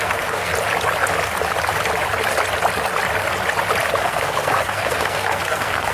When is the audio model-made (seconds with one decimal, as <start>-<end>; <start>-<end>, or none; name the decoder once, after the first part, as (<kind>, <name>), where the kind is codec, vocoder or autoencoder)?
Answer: 0.0-0.5 (codec, SNAC); 4.0-5.9